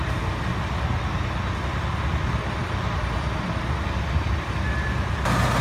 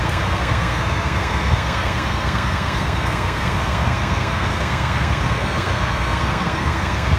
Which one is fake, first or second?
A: second